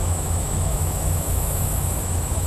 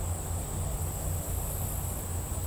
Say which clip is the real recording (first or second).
second